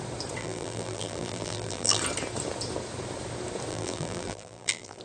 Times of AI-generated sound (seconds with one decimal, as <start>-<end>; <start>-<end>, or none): 0.4-2.0; 3.7-5.0